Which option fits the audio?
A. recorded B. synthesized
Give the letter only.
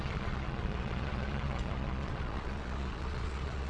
B